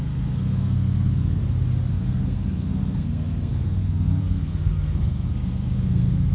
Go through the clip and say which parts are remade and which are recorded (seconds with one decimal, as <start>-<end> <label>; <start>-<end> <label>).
0.0-1.4 remade; 1.4-1.9 recorded; 1.9-6.3 remade